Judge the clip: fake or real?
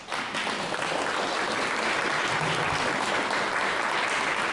real